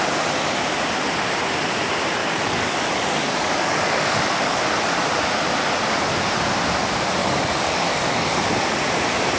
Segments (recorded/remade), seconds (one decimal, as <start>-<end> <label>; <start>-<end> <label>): 0.0-2.2 recorded; 2.2-4.6 remade; 4.6-7.2 recorded; 7.2-8.4 remade; 8.4-9.4 recorded